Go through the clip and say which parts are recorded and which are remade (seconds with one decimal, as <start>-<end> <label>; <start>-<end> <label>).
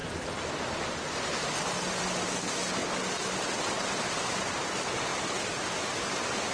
0.0-2.2 recorded; 2.2-2.8 remade; 2.8-3.6 recorded; 3.6-6.5 remade